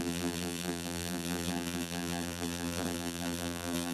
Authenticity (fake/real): fake